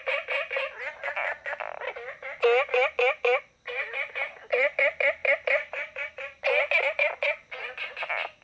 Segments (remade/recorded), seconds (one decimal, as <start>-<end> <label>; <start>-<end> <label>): 0.0-5.2 recorded; 5.2-6.1 remade; 6.1-8.4 recorded